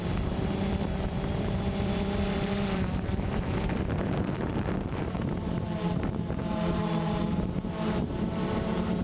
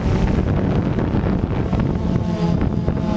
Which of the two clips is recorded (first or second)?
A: second